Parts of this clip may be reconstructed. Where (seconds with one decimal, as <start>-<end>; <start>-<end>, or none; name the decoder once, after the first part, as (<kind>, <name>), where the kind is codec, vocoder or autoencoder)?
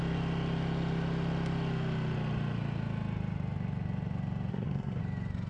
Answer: 4.5-5.0 (codec, SNAC)